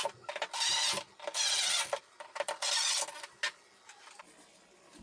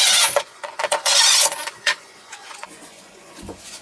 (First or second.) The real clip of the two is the first